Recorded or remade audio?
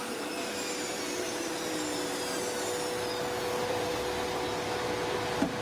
recorded